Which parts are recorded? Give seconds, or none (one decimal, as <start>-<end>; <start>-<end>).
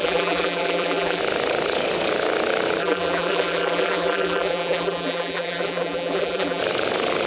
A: 1.2-2.8; 6.6-7.3